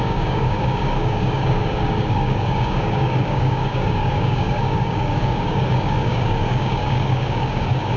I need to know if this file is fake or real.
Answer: fake